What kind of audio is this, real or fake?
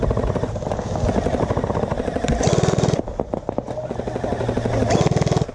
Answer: real